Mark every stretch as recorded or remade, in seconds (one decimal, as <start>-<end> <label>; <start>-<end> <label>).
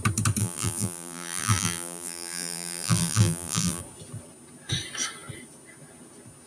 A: 0.0-0.4 recorded; 0.4-3.8 remade; 3.8-6.5 recorded